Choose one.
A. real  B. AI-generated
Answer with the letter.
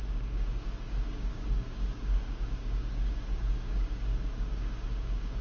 B